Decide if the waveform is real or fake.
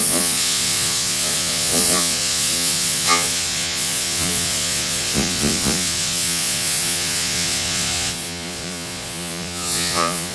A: fake